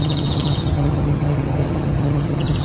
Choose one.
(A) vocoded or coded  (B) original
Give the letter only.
A